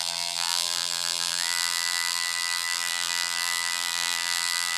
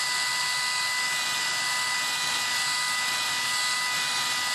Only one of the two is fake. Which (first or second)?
first